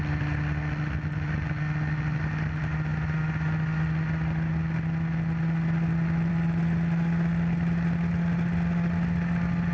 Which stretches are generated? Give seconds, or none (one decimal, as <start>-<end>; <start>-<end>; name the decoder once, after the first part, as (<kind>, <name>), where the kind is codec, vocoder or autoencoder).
none

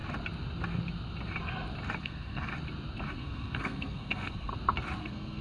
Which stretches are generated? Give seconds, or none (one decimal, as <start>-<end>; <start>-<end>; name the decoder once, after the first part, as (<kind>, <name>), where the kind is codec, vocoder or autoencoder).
2.0-2.5 (codec, SNAC); 3.1-4.5; 5.0-5.4

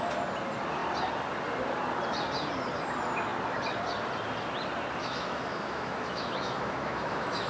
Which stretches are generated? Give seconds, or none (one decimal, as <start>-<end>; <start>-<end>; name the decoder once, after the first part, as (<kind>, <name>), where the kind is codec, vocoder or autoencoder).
5.0-7.5 (autoencoder, DAC-VAE)

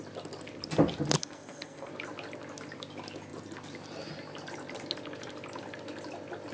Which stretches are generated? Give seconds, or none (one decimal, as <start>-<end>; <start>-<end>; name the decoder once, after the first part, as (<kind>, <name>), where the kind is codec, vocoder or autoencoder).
1.2-1.9 (codec, SNAC)

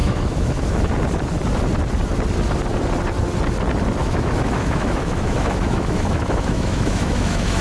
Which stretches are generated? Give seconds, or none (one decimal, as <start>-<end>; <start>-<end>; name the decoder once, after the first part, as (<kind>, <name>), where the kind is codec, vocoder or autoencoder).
0.0-0.9 (autoencoder, DAC-VAE); 4.0-7.6

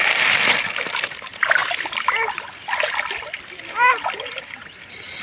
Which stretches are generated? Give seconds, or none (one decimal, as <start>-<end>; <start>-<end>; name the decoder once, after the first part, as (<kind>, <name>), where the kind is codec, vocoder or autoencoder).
none